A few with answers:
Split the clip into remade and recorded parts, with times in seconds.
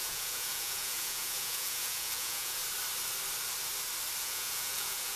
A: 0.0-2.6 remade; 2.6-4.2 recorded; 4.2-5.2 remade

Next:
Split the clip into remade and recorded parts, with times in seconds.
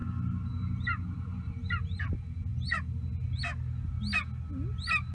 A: 0.0-5.1 recorded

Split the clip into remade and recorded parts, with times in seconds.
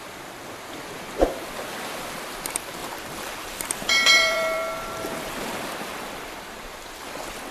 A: 0.0-2.8 recorded; 2.8-7.0 remade; 7.0-7.5 recorded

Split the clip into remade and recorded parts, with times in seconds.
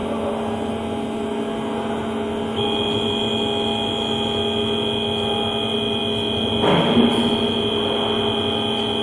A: 0.0-9.0 recorded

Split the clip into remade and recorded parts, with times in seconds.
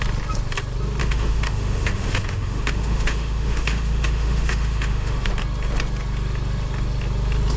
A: 0.0-1.0 recorded; 1.0-5.3 remade; 5.3-7.6 recorded